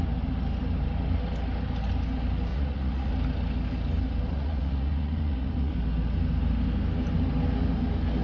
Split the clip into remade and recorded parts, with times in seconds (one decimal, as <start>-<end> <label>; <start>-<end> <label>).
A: 0.0-2.5 recorded; 2.5-3.1 remade; 3.1-4.3 recorded; 4.3-5.7 remade; 5.7-8.2 recorded